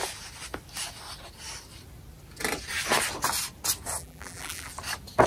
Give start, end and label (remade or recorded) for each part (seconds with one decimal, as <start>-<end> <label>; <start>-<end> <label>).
0.0-4.0 recorded; 4.0-4.7 remade; 4.7-5.3 recorded